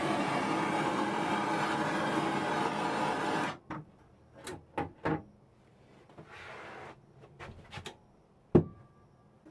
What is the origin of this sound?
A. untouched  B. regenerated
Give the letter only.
A